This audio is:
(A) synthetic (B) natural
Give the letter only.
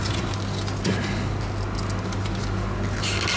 B